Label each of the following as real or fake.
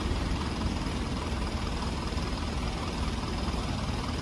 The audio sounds fake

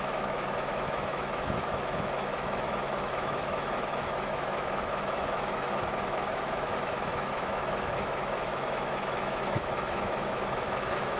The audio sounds fake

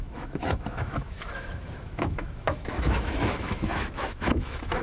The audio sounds fake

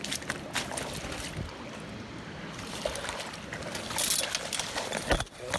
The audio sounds real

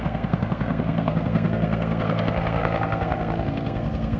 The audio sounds fake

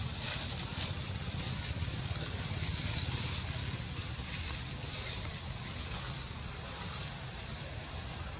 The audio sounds fake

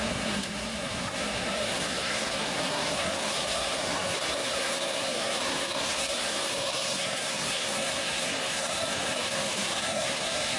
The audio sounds fake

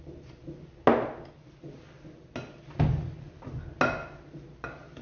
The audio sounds real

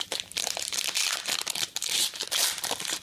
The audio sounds fake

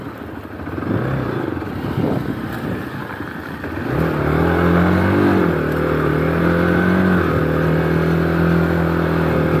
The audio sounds real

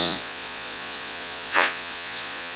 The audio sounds fake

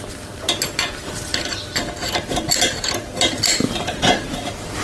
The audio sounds real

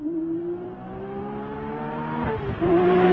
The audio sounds fake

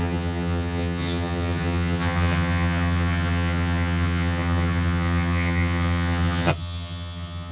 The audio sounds fake